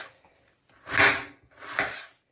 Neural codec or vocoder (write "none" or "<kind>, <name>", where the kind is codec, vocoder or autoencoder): none